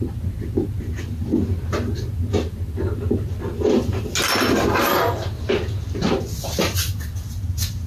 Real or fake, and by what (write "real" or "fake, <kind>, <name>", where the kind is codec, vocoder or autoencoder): real